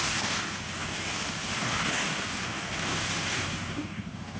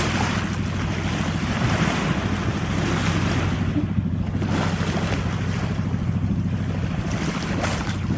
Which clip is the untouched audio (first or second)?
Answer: second